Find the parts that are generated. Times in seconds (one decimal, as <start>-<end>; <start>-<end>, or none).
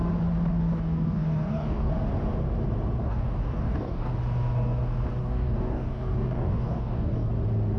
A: 0.5-1.9; 3.0-4.1; 5.2-7.3